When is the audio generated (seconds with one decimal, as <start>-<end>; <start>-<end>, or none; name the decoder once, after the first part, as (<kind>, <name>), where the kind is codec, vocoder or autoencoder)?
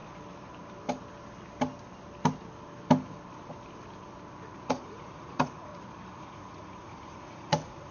4.7-5.7 (vocoder, Vocos); 6.2-7.9